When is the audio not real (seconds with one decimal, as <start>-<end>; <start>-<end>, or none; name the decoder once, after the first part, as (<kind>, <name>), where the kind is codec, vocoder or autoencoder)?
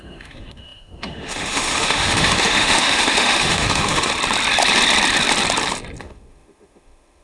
0.0-4.1 (autoencoder, DAC-VAE); 6.0-7.2